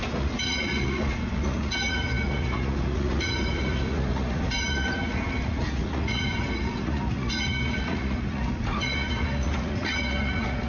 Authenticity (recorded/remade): remade